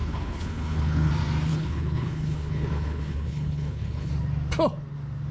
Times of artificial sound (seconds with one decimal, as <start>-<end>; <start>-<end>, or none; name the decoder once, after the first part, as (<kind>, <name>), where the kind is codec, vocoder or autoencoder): 0.0-1.1 (codec, HILCodec); 1.5-4.1